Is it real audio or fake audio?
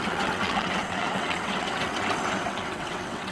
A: fake